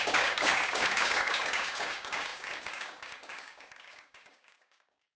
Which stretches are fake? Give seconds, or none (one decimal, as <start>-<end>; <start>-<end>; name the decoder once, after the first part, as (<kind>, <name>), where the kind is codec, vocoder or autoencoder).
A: 0.0-5.2 (codec, DAC)